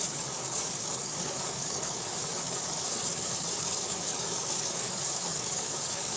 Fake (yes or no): yes